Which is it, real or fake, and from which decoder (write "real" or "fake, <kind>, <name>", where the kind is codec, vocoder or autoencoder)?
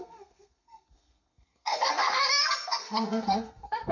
fake, codec, SNAC